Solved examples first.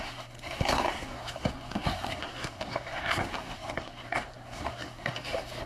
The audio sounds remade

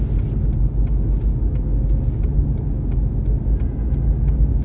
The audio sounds recorded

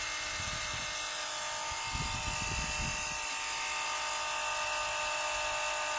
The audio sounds recorded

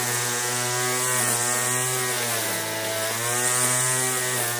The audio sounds recorded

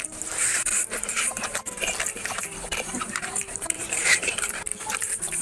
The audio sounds remade